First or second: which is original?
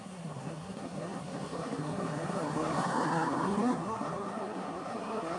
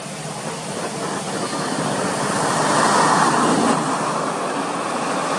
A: second